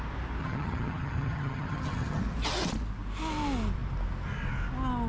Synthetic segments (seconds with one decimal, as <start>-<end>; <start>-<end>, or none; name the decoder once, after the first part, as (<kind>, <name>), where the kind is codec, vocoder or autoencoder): 0.4-2.2 (vocoder, HiFi-GAN)